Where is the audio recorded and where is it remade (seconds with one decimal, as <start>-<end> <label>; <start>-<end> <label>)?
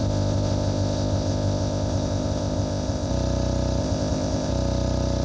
0.0-3.1 remade; 3.1-3.8 recorded; 3.8-4.5 remade; 4.5-5.2 recorded